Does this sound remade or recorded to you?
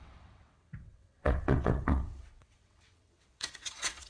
remade